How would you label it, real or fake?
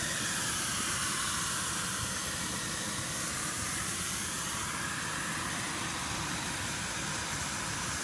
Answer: real